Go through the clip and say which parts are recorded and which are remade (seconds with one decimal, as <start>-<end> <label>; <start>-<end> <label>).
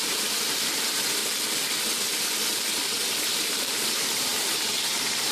0.0-1.2 remade; 1.2-3.1 recorded; 3.1-5.3 remade